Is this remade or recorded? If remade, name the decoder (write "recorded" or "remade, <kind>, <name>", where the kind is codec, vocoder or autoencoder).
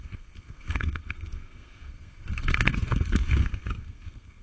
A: remade, codec, SNAC